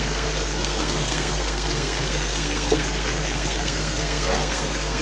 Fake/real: fake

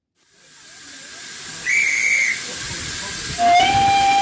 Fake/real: real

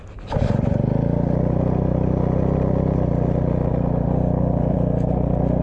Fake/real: real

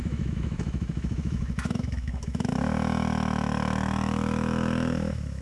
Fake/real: fake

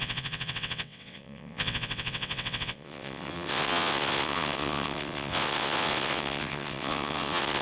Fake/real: fake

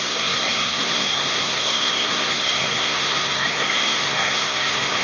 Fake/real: fake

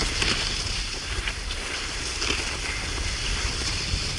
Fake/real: real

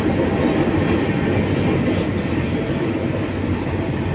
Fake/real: real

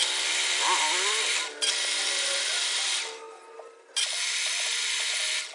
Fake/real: real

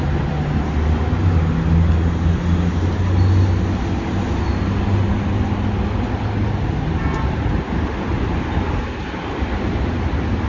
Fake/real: real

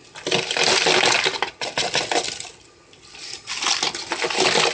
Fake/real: real